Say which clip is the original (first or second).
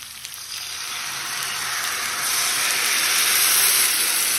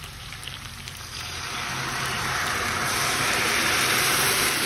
first